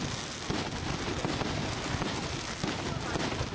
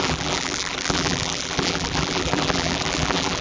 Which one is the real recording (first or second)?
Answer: first